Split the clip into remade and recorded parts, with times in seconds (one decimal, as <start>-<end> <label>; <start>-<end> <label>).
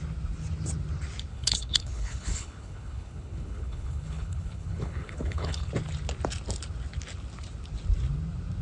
0.0-1.3 recorded; 1.3-5.7 remade; 5.7-8.6 recorded